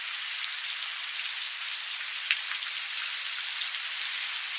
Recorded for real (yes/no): yes